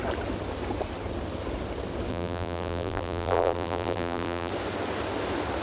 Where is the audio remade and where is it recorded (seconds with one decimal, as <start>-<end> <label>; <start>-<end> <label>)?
0.0-2.1 recorded; 2.1-4.5 remade; 4.5-5.6 recorded